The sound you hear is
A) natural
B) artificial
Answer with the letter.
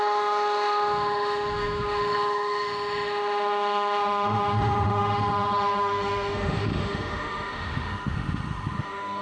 B